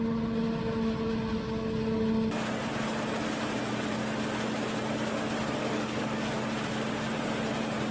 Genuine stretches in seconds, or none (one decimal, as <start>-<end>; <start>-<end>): 0.0-5.6; 6.3-7.9